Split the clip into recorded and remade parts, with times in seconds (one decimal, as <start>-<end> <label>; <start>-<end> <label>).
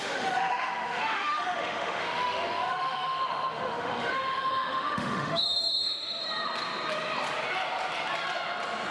0.0-6.2 remade; 6.2-8.9 recorded